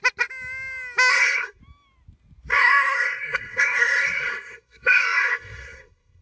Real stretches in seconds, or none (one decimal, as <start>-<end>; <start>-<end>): 0.0-1.1; 1.6-2.5